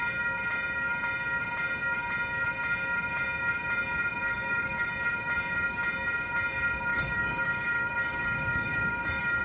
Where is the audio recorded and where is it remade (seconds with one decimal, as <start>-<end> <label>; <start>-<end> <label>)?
0.0-4.2 recorded; 4.2-4.9 remade; 4.9-6.9 recorded; 6.9-9.4 remade